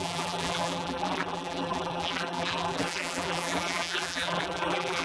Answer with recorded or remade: remade